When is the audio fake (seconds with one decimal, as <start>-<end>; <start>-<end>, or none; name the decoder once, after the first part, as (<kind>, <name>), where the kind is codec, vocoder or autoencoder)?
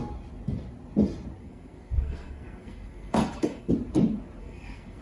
1.4-3.7 (codec, SNAC); 4.4-5.0